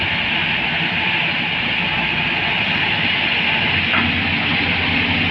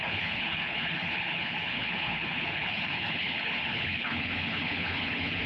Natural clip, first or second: first